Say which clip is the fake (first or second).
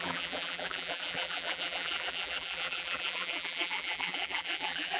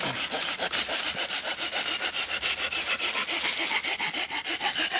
first